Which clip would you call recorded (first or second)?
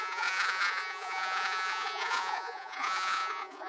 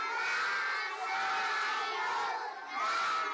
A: second